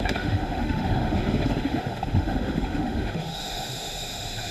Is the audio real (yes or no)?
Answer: no